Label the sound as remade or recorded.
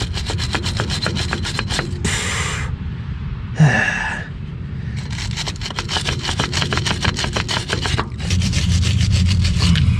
remade